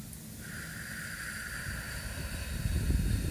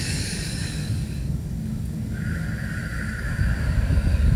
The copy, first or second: second